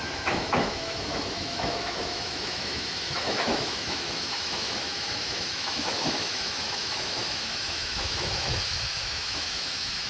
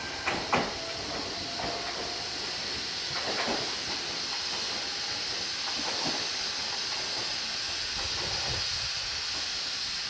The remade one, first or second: first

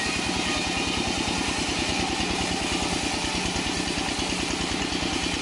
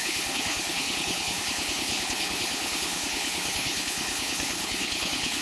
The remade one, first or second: second